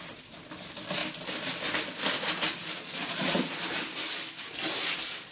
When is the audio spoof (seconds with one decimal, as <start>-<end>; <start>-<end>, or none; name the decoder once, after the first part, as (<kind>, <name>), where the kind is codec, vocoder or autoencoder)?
2.7-3.6 (vocoder, Vocos)